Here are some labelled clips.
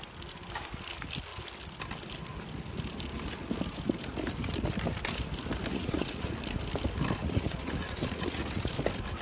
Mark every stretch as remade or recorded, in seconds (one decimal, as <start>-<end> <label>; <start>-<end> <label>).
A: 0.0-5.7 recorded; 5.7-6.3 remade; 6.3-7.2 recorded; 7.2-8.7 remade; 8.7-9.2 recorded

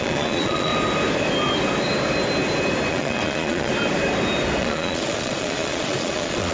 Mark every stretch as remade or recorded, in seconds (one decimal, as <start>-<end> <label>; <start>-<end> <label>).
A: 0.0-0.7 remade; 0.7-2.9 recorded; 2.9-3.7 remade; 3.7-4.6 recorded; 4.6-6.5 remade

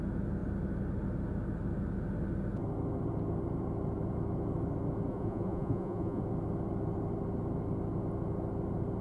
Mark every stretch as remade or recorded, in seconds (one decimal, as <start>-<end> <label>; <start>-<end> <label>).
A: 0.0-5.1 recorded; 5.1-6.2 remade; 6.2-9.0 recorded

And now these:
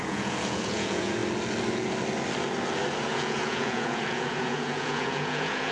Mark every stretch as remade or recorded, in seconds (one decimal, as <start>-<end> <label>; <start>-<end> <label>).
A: 0.0-1.2 remade; 1.2-3.0 recorded; 3.0-5.7 remade

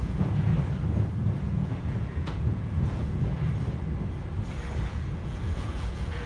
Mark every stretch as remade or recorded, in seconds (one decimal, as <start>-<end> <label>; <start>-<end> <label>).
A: 0.0-0.5 remade; 0.5-1.4 recorded; 1.4-3.3 remade; 3.3-4.9 recorded; 4.9-6.3 remade